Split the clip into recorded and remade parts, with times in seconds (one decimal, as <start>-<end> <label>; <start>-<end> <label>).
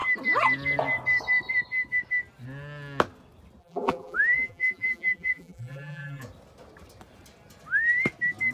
0.0-3.6 recorded; 3.6-6.2 remade; 6.2-8.5 recorded